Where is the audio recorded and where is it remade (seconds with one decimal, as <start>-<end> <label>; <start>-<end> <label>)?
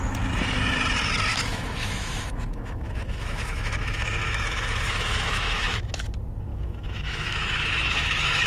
0.0-1.3 recorded; 1.3-6.1 remade; 6.1-6.5 recorded; 6.5-8.5 remade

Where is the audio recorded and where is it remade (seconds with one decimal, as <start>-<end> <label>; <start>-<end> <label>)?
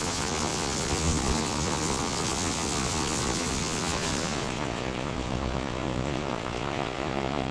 0.0-7.5 remade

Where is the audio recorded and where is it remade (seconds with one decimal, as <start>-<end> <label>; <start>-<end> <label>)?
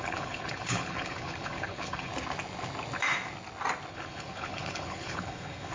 0.0-2.1 remade; 2.1-3.9 recorded; 3.9-5.7 remade